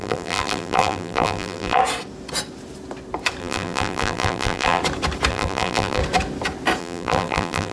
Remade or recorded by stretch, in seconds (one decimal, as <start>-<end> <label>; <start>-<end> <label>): 0.0-1.8 remade; 1.8-3.4 recorded; 3.4-4.8 remade; 4.8-5.3 recorded; 5.3-6.0 remade; 6.0-6.8 recorded; 6.8-7.7 remade